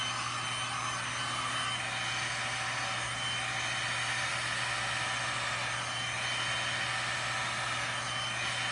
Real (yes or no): yes